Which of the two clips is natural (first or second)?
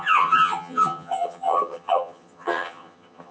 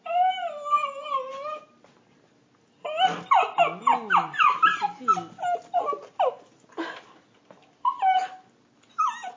second